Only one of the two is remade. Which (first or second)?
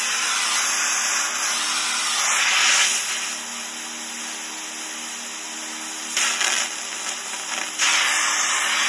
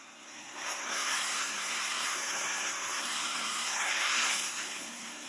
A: second